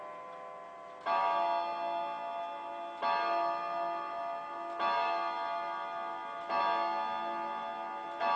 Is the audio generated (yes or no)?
no